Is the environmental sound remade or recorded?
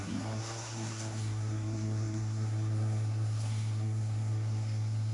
remade